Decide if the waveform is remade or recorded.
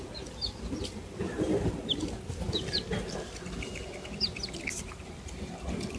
recorded